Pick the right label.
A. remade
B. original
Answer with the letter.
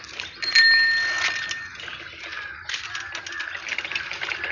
B